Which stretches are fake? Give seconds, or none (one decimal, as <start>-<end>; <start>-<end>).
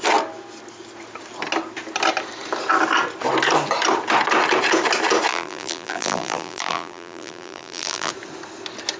5.3-8.1